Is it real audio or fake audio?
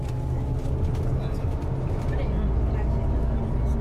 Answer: real